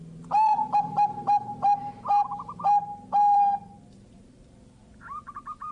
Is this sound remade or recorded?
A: remade